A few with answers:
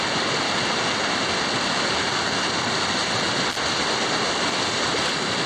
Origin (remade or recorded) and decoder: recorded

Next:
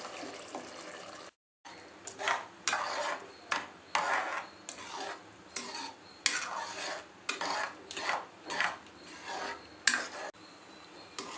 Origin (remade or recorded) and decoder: recorded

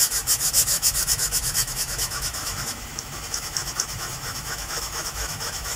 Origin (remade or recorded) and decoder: remade, autoencoder, DAC-VAE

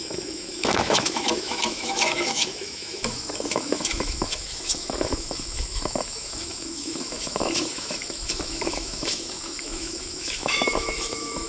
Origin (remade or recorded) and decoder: remade, autoencoder, DAC-VAE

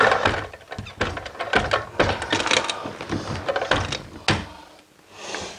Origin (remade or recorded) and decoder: recorded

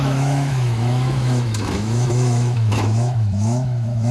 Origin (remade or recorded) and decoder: remade, autoencoder, DAC-VAE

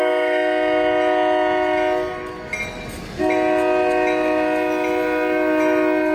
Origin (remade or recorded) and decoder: recorded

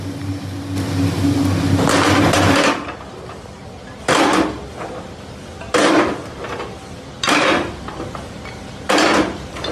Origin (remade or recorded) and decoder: recorded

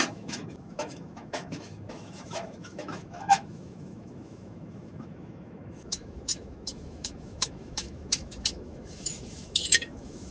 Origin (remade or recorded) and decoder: remade, autoencoder, DAC-VAE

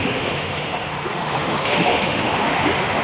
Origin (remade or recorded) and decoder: remade, autoencoder, DAC-VAE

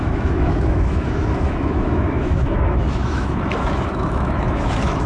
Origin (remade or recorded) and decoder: remade, autoencoder, DAC-VAE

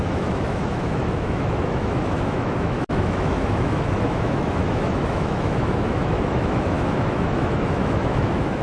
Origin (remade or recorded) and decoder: remade, autoencoder, DAC-VAE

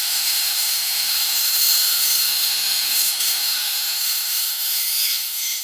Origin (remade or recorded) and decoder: remade, autoencoder, DAC-VAE